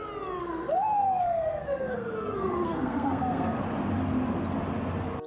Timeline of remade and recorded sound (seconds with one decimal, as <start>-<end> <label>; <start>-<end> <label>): 0.0-0.4 recorded; 0.4-3.6 remade; 3.6-5.3 recorded